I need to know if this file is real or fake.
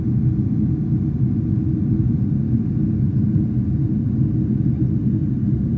real